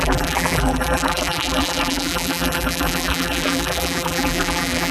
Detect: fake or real fake